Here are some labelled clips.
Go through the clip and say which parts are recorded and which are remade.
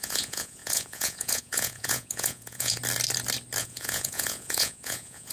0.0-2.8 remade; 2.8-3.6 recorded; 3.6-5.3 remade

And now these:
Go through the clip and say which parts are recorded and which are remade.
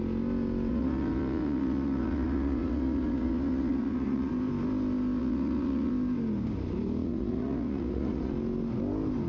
0.0-0.7 recorded; 0.7-4.3 remade; 4.3-5.2 recorded; 5.2-5.9 remade; 5.9-7.0 recorded; 7.0-8.3 remade; 8.3-9.3 recorded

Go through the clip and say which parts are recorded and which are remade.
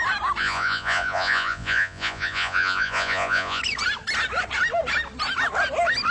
0.0-0.4 recorded; 0.4-3.6 remade; 3.6-6.1 recorded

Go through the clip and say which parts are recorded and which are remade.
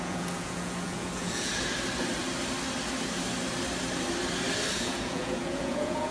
0.0-1.5 remade; 1.5-4.7 recorded; 4.7-6.1 remade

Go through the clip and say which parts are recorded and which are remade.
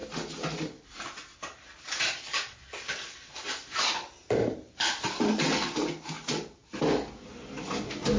0.0-8.2 recorded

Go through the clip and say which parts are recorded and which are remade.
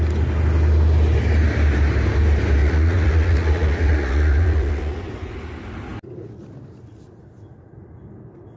0.0-2.6 recorded; 2.6-5.5 remade; 5.5-8.6 recorded